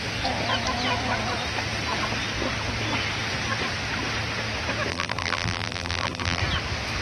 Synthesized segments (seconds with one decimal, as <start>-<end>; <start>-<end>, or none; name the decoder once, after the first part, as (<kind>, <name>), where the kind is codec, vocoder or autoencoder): 4.9-6.4 (vocoder, BigVGAN v2)